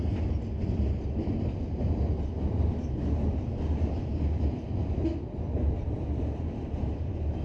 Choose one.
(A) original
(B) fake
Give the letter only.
A